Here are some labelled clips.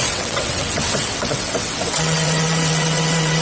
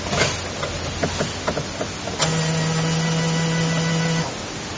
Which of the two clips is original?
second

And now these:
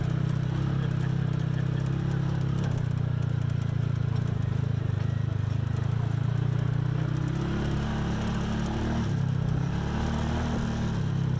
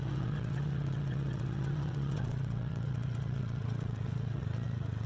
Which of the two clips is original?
first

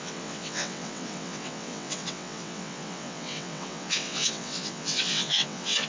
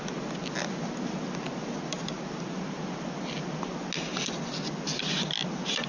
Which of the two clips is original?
second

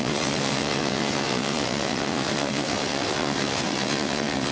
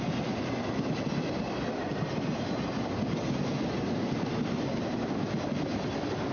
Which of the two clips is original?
second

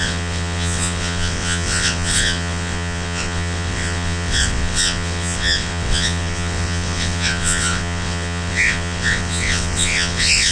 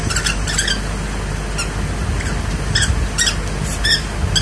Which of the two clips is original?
second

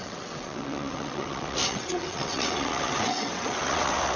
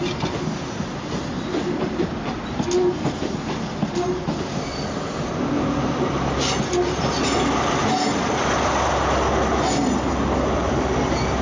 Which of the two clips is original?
second